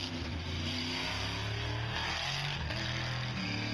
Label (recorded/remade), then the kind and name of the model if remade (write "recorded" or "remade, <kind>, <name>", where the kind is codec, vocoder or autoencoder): recorded